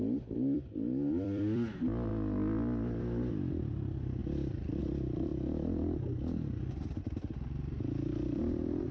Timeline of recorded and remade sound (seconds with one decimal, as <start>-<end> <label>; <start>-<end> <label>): 0.0-2.1 remade; 2.1-3.0 recorded; 3.0-5.3 remade; 5.3-7.0 recorded; 7.0-8.9 remade